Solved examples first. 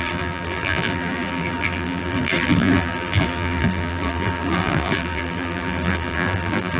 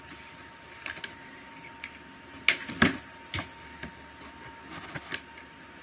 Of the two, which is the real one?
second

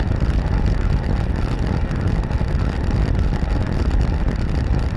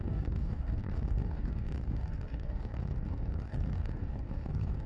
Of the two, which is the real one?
first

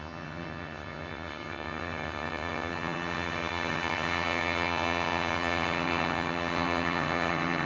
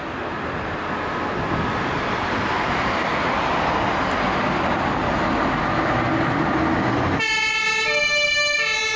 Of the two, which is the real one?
second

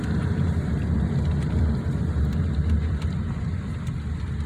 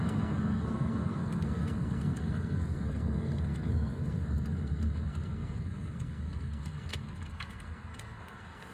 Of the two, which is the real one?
first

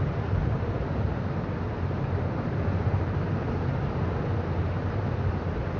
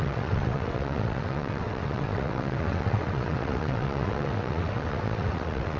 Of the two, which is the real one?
first